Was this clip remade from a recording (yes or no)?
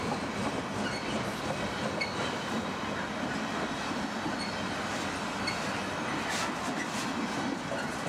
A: no